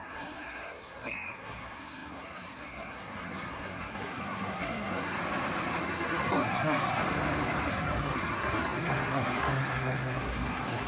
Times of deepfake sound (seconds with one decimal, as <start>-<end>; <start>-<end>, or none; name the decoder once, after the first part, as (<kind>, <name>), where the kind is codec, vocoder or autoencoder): 0.0-5.2 (codec, SNAC); 5.8-7.0; 7.7-10.9